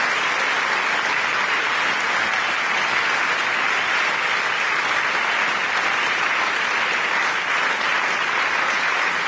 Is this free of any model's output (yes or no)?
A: yes